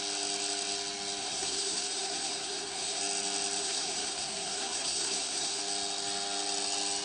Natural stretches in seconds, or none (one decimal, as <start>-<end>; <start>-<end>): 0.0-1.2; 3.0-3.6; 5.6-7.0